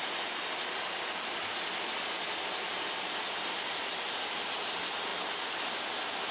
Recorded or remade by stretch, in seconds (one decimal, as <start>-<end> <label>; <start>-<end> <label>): 0.0-6.3 recorded